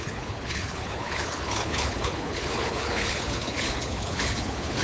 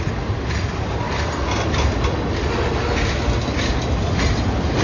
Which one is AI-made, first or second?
first